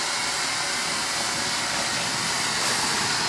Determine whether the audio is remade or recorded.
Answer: recorded